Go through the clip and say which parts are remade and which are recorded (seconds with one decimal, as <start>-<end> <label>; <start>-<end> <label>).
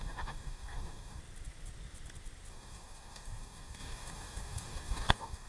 0.0-1.2 remade; 1.2-2.5 recorded; 2.5-5.5 remade